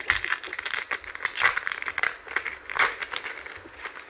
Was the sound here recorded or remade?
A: recorded